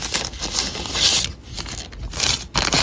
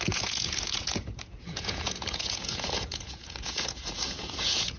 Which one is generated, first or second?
second